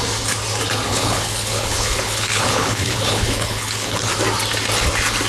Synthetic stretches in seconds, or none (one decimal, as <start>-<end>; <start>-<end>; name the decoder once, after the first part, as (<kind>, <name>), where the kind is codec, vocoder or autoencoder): 0.9-4.1 (codec, HILCodec)